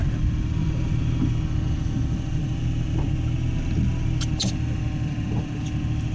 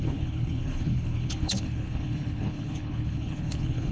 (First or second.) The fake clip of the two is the second